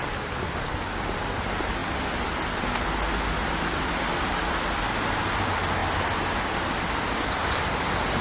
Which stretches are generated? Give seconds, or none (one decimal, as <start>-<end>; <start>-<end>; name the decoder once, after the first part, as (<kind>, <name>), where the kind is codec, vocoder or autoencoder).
none